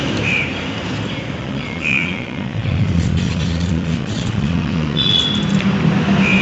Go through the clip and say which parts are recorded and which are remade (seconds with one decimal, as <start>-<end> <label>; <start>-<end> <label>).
0.0-1.4 recorded; 1.4-5.2 remade; 5.2-6.4 recorded